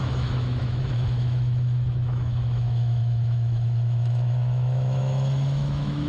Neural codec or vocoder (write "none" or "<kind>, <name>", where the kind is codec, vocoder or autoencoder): autoencoder, DAC-VAE